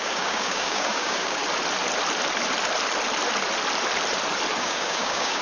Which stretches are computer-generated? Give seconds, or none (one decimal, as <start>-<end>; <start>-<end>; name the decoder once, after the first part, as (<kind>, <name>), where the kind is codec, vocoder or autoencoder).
0.0-1.4 (codec, DAC); 4.6-5.4